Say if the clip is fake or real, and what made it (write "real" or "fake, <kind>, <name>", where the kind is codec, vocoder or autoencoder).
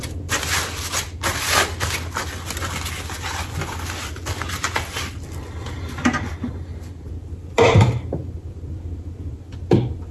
real